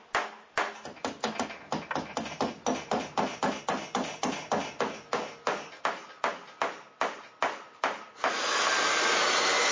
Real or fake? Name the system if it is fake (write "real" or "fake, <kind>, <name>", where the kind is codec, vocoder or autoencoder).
real